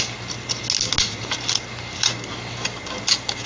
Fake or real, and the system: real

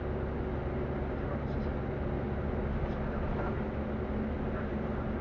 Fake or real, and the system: real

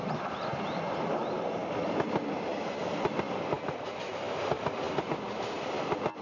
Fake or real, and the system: real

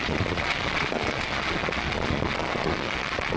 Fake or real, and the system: fake, vocoder, Vocos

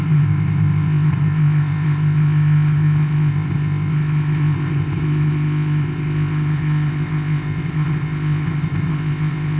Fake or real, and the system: fake, codec, ZipCodec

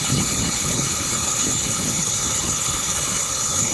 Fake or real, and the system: fake, codec, HILCodec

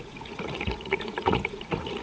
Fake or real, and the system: fake, vocoder, Vocos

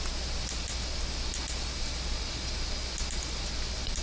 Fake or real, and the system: real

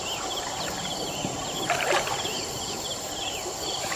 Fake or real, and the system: fake, vocoder, BigVGAN v2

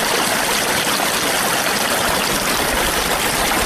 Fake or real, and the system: real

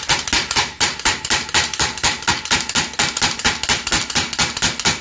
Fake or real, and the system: real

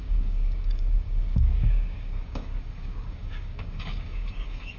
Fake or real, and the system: fake, codec, DAC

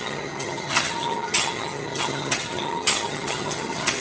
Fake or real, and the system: fake, vocoder, HiFi-GAN